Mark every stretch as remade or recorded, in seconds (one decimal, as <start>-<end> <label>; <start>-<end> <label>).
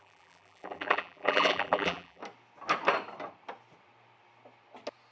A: 0.0-2.2 remade; 2.2-5.1 recorded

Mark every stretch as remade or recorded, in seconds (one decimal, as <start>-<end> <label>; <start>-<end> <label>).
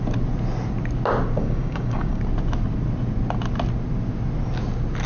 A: 0.0-1.4 recorded; 1.4-2.2 remade; 2.2-5.1 recorded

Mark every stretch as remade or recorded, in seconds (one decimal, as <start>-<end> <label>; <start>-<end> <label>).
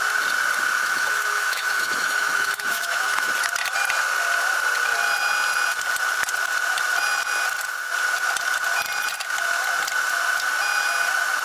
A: 0.0-0.8 recorded; 0.8-3.3 remade; 3.3-11.4 recorded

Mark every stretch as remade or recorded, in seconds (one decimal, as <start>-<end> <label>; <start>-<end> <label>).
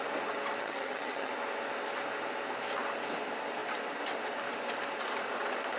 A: 0.0-0.6 recorded; 0.6-1.3 remade; 1.3-5.8 recorded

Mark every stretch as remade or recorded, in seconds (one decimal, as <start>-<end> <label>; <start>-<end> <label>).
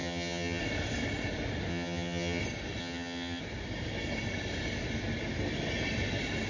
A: 0.0-0.6 remade; 0.6-1.7 recorded; 1.7-2.4 remade; 2.4-2.8 recorded; 2.8-3.4 remade; 3.4-6.5 recorded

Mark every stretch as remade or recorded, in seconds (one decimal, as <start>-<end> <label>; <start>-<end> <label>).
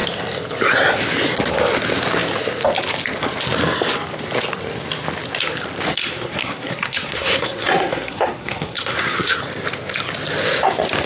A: 0.0-6.0 recorded; 6.0-9.4 remade; 9.4-11.1 recorded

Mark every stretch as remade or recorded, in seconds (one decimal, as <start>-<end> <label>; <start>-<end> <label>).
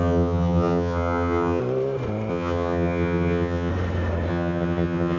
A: 0.0-1.6 remade; 1.6-2.3 recorded; 2.3-3.7 remade; 3.7-4.3 recorded; 4.3-5.2 remade